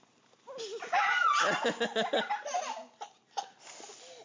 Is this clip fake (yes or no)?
no